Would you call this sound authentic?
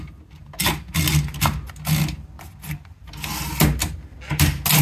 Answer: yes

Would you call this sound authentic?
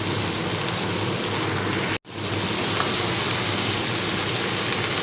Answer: yes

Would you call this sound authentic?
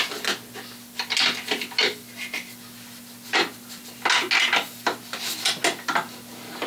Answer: yes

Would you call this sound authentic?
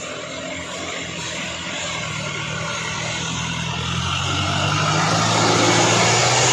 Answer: yes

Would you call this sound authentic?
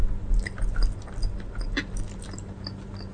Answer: yes